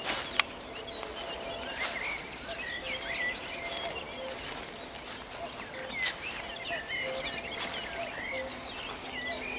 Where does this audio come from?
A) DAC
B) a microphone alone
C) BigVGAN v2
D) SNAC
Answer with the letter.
B